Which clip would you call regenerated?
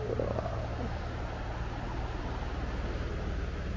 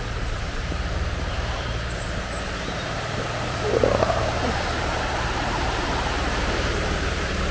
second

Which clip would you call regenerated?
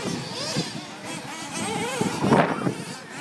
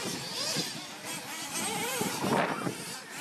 second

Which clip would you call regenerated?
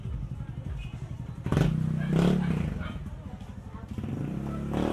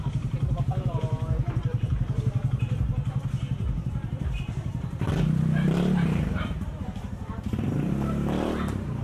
second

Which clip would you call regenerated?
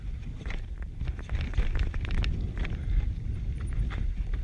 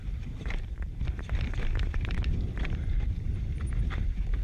second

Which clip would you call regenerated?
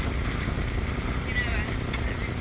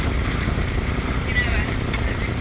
second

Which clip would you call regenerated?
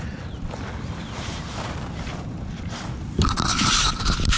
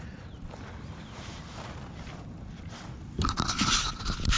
first